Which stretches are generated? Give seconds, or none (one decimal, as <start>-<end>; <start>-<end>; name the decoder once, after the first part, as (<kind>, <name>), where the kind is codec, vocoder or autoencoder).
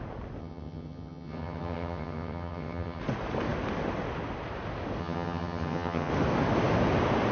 0.4-3.0 (vocoder, HiFi-GAN); 5.0-6.1